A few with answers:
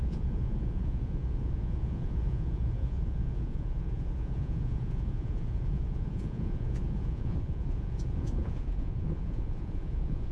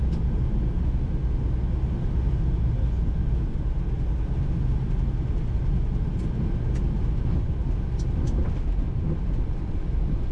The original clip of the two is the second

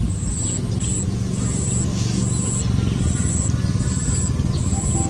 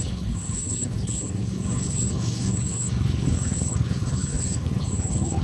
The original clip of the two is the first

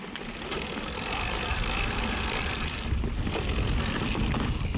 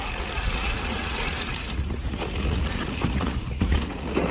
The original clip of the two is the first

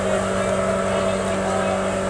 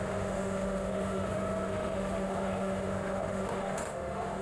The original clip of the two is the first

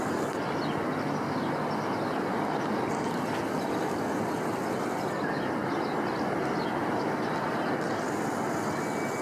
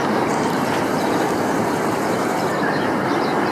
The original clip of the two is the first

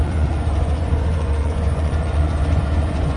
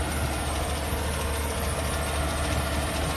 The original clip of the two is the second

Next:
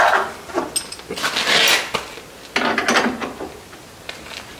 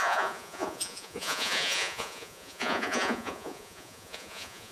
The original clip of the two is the first